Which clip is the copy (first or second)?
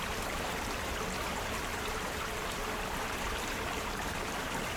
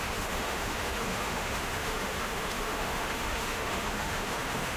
second